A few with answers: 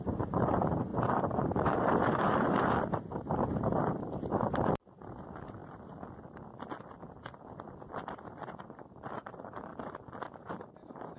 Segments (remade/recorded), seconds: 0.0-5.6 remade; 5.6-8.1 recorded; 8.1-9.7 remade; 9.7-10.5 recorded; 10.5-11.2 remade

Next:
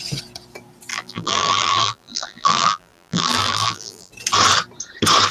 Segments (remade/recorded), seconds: 0.0-0.9 recorded; 0.9-4.1 remade; 4.1-5.3 recorded